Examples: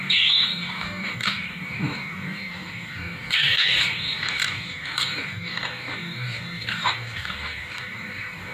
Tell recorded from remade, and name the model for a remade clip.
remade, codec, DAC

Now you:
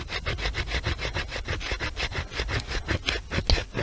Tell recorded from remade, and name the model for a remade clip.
recorded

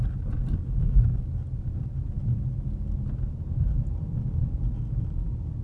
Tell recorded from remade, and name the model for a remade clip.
recorded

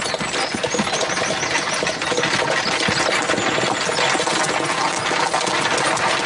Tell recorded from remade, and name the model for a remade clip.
recorded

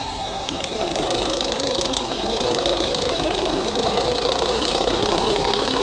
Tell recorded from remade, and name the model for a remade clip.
remade, codec, SNAC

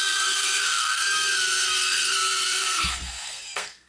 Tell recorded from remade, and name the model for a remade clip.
remade, codec, SNAC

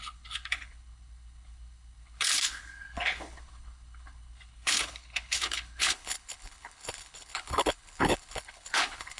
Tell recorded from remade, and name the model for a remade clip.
remade, codec, HILCodec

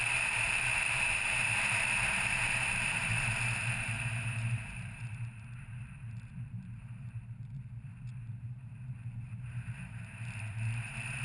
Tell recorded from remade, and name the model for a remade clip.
remade, vocoder, BigVGAN v2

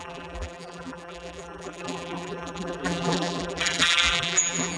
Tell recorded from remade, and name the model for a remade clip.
remade, vocoder, BigVGAN v2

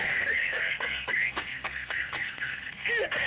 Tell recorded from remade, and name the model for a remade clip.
remade, codec, SNAC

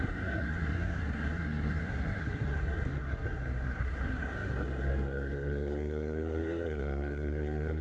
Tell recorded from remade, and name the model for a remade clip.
remade, codec, SNAC